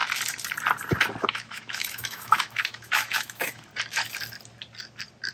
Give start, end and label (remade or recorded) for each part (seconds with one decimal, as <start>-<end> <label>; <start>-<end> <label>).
0.0-1.2 recorded; 1.2-3.7 remade; 3.7-5.3 recorded